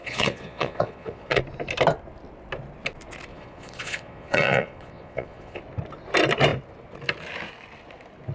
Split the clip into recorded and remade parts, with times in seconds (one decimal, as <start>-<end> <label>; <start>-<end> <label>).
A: 0.0-1.4 remade; 1.4-3.3 recorded; 3.3-5.6 remade; 5.6-8.3 recorded

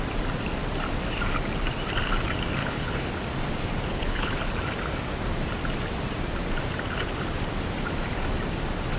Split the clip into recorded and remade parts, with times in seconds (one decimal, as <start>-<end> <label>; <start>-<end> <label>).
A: 0.0-2.6 recorded; 2.6-3.1 remade; 3.1-3.9 recorded; 3.9-4.4 remade; 4.4-9.0 recorded

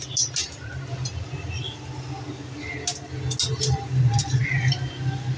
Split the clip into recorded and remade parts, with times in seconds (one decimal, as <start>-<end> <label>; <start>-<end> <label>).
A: 0.0-5.4 recorded

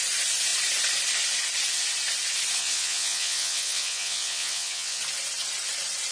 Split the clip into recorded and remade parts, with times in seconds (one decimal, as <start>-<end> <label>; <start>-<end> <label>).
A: 0.0-2.6 recorded; 2.6-5.0 remade; 5.0-6.1 recorded

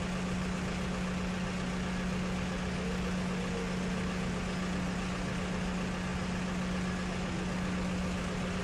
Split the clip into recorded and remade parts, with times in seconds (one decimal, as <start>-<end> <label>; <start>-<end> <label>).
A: 0.0-8.6 recorded

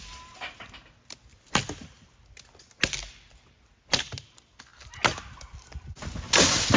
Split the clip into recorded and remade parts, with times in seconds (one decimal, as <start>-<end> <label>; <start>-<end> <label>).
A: 0.0-6.8 recorded

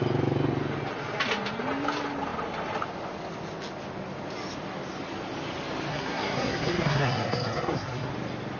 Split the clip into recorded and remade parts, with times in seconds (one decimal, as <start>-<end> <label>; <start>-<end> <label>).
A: 0.0-5.9 recorded; 5.9-8.1 remade; 8.1-8.6 recorded